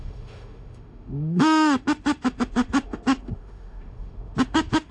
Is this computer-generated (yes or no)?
yes